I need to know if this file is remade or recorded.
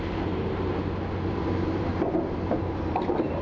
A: remade